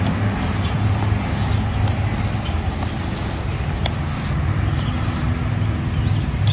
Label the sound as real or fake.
real